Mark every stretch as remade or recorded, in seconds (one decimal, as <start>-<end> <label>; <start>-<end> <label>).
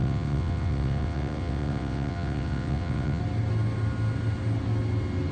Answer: 0.0-3.2 remade; 3.2-5.3 recorded